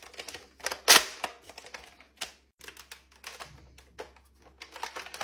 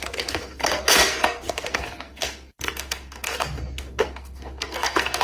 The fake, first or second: second